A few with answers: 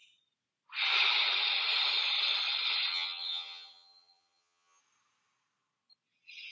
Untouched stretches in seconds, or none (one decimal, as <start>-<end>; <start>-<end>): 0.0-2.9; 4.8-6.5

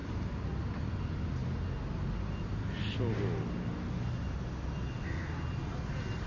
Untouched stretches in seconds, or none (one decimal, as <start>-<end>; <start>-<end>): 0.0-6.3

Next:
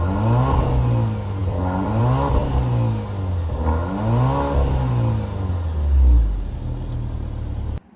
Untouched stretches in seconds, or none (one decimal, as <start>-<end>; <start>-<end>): 0.0-1.4; 2.0-8.0